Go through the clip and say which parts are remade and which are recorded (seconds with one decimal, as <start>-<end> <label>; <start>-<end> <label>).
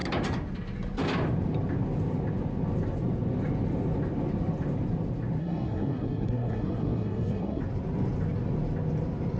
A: 0.0-5.4 recorded; 5.4-7.6 remade; 7.6-9.4 recorded